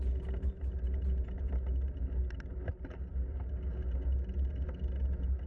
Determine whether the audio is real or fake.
real